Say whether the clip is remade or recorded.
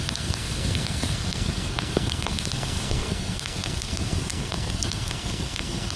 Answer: remade